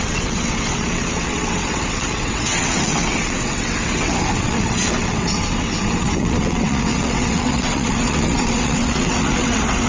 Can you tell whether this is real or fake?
fake